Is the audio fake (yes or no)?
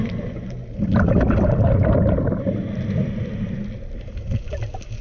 no